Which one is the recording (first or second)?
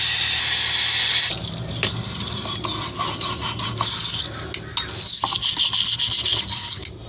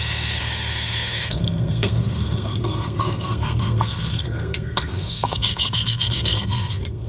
first